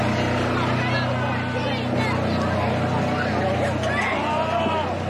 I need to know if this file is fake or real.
real